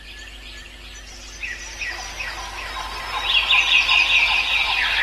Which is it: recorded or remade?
remade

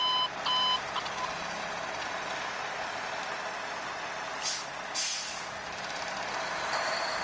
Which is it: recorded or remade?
recorded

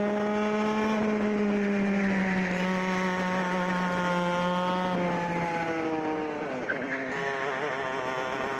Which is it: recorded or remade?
recorded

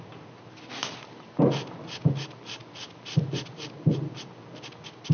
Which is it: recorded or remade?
recorded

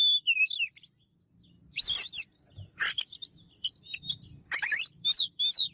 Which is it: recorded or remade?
recorded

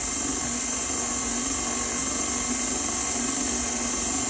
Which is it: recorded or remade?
recorded